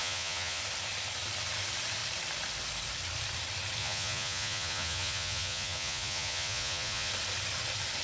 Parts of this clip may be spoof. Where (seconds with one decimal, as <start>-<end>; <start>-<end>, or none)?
0.0-0.6; 3.8-7.1